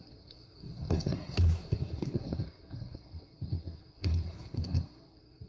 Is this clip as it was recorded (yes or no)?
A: no